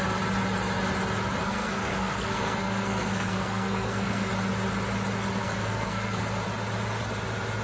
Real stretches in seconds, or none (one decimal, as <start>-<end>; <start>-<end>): 0.0-1.4; 4.3-5.4; 6.2-7.6